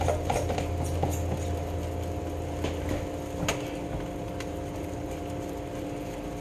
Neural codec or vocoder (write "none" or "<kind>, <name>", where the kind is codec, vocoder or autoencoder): none